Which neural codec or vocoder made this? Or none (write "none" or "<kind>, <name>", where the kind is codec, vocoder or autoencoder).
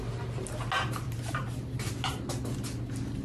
none